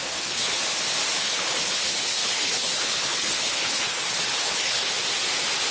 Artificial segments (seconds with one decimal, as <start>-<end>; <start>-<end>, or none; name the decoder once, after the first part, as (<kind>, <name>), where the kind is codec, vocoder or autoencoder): 0.0-0.6 (codec, HILCodec); 1.2-5.0